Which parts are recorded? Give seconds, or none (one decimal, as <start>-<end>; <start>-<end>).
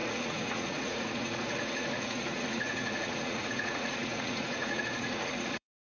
none